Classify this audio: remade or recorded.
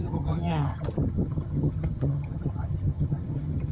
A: remade